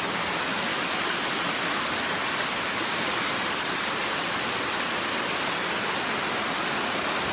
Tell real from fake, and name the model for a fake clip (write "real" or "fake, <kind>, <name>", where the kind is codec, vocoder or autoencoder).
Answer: real